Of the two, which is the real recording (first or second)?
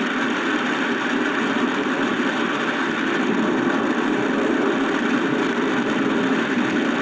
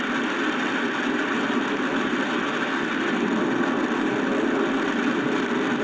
second